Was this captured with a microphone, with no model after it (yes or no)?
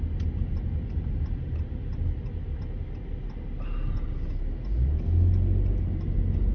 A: yes